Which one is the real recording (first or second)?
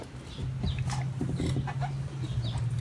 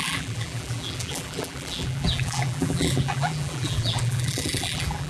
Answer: first